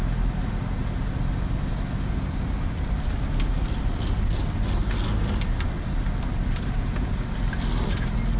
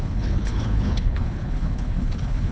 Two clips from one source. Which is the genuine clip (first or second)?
first